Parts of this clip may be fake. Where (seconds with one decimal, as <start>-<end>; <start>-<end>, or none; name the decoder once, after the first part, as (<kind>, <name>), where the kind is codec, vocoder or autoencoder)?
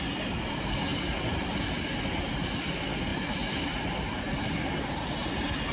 none